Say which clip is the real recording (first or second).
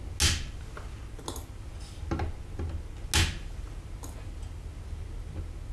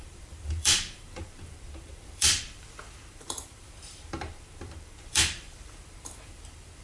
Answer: first